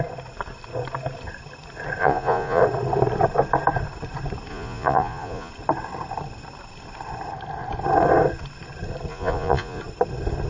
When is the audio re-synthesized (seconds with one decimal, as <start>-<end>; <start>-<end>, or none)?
2.0-2.6; 4.5-5.5; 9.1-9.8